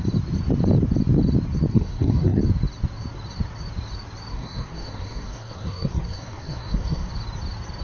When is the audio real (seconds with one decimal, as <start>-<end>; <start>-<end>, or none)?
0.0-1.7; 2.4-4.3; 7.1-7.8